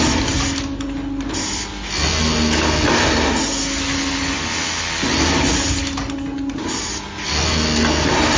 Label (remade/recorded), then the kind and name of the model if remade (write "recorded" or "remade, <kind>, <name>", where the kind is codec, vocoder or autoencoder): recorded